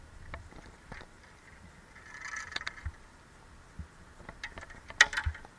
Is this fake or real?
real